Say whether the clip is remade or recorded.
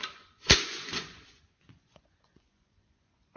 remade